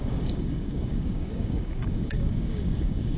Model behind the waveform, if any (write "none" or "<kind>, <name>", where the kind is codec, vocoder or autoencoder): codec, DAC